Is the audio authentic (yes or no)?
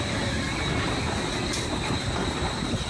yes